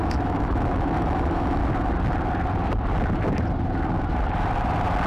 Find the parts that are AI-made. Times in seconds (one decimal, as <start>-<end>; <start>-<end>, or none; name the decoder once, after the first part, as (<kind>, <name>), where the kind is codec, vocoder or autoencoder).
0.0-1.6 (autoencoder, DAC-VAE)